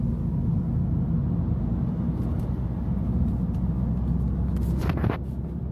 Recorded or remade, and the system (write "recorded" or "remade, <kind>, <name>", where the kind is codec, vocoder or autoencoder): recorded